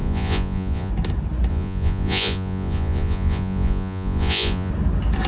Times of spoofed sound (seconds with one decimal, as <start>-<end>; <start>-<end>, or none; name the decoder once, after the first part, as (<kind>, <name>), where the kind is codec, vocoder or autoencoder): 0.0-0.9 (vocoder, Vocos); 1.5-4.7

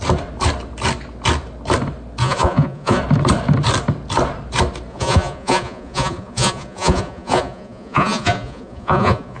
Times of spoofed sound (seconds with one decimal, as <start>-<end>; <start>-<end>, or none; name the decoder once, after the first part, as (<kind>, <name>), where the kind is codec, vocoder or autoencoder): 2.2-3.0 (vocoder, Vocos); 4.9-9.4

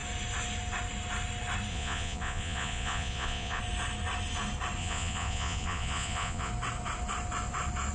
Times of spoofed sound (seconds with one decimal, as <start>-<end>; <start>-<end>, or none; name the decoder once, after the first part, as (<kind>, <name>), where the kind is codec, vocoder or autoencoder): 1.7-3.6 (vocoder, Vocos); 4.8-6.5

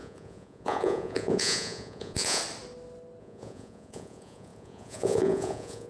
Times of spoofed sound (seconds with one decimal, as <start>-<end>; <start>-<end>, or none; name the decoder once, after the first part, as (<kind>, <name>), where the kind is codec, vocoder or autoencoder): 0.0-2.4 (vocoder, Vocos); 3.2-5.9

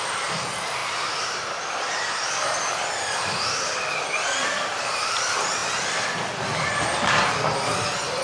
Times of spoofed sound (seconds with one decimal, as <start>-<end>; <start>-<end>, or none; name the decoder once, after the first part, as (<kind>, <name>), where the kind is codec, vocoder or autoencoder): none

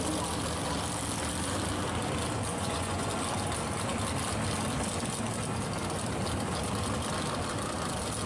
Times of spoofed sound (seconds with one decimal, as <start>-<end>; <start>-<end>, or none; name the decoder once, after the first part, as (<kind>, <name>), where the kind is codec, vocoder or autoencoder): 2.5-3.1 (vocoder, Vocos)

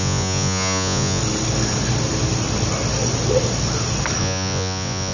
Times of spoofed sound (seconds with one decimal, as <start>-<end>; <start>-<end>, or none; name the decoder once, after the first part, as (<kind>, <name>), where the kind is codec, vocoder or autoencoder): 0.0-1.2 (vocoder, Vocos); 4.2-5.1